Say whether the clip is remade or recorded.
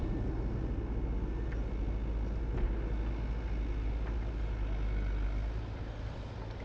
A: recorded